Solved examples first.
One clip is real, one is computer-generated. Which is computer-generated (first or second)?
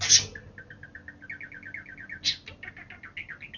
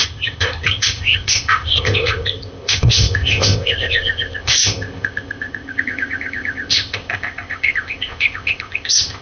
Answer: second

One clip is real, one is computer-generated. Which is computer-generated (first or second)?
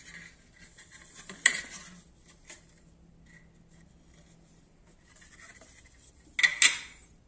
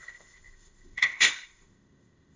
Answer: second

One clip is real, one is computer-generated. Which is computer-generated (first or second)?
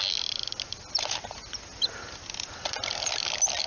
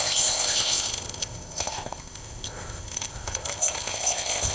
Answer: second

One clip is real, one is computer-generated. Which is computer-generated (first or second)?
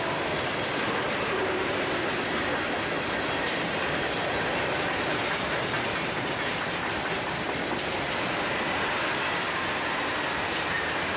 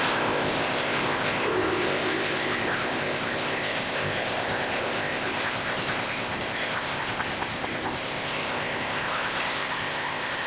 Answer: second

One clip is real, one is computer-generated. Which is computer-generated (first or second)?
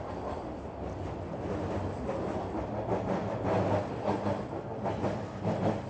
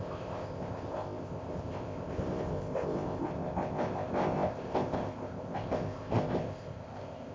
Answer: second